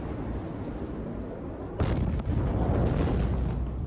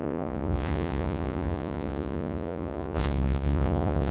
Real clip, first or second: first